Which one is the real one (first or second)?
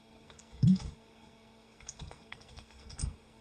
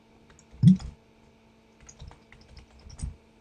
second